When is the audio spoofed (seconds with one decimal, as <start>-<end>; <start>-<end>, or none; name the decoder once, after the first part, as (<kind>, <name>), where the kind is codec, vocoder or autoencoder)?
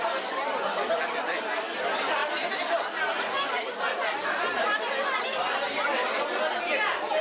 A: none